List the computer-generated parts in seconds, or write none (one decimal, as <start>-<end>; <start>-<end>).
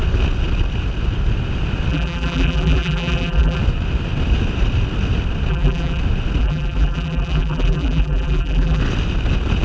1.9-3.6; 5.5-6.0; 6.4-8.8